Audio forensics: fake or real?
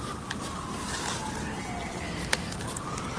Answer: real